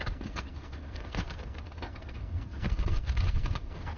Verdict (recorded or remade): remade